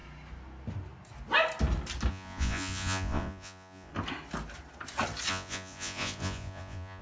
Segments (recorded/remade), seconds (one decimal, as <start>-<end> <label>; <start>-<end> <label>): 0.0-2.1 recorded; 2.1-3.9 remade; 3.9-5.3 recorded; 5.3-7.0 remade